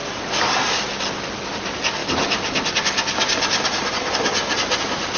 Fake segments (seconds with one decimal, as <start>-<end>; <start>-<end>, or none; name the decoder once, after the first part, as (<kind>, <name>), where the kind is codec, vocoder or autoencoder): none